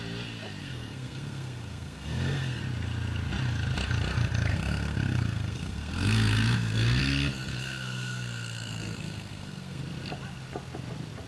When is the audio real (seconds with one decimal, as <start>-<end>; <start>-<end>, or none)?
0.0-0.6; 2.6-4.5; 7.0-7.5; 9.8-11.3